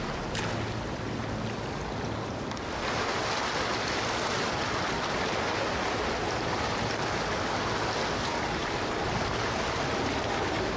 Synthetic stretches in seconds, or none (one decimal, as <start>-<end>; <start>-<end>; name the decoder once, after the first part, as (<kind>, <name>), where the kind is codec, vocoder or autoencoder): 8.6-9.3 (vocoder, BigVGAN v2)

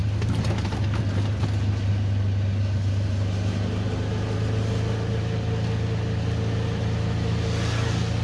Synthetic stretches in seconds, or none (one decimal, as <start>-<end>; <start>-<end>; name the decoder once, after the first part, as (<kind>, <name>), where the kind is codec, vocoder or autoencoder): none

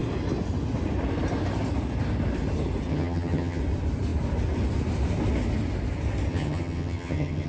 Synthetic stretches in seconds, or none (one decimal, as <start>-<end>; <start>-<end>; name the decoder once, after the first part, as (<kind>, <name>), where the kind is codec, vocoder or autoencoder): 2.9-3.6 (vocoder, HiFi-GAN); 6.3-7.5

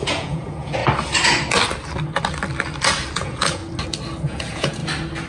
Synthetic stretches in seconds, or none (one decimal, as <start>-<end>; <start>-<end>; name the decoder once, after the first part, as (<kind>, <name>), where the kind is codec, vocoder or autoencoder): 0.0-0.8 (vocoder, Vocos); 3.1-3.6; 4.2-4.8

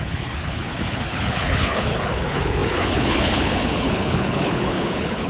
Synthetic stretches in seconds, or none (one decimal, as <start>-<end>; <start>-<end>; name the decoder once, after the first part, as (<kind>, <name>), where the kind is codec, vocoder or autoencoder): 0.0-5.3 (codec, HILCodec)

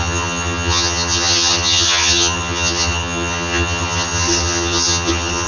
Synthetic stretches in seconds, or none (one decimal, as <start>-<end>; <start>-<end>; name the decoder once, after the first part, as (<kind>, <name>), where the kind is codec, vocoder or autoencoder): 0.0-5.5 (vocoder, HiFi-GAN)